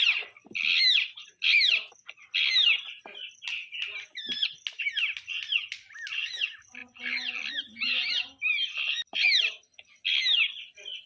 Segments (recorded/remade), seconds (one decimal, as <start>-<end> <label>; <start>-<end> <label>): 0.0-11.1 recorded